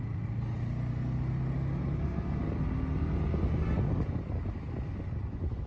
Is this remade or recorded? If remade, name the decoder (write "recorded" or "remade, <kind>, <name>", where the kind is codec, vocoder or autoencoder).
recorded